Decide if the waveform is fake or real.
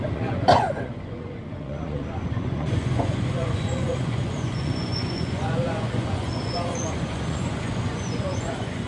fake